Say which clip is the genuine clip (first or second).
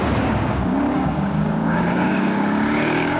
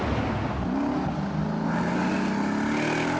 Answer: second